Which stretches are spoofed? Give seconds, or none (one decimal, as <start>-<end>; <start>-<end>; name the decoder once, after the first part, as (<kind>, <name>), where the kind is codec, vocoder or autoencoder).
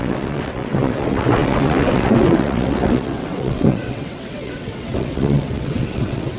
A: 0.0-6.4 (vocoder, WaveNeXt)